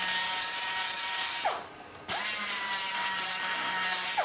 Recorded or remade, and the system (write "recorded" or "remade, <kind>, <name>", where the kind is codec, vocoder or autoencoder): remade, vocoder, BigVGAN v2